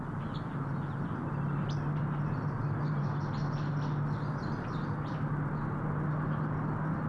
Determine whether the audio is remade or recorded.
recorded